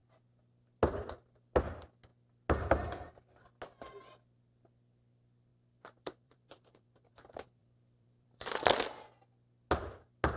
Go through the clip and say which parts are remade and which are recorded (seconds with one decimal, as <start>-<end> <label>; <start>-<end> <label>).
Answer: 0.0-5.5 recorded; 5.5-7.1 remade; 7.1-7.6 recorded; 7.6-8.7 remade; 8.7-10.4 recorded